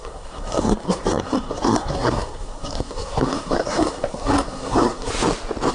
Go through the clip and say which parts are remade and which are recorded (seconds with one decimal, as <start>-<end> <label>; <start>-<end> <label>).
0.0-5.1 remade; 5.1-5.7 recorded

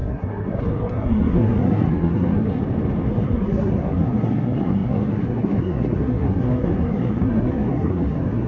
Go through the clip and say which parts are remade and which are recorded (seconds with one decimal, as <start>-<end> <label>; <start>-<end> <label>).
0.0-2.6 remade; 2.6-3.1 recorded; 3.1-8.5 remade

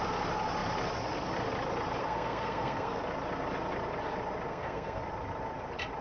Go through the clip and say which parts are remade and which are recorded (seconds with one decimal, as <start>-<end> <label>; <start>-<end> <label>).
0.0-2.0 recorded; 2.0-3.0 remade; 3.0-4.5 recorded; 4.5-5.0 remade; 5.0-6.0 recorded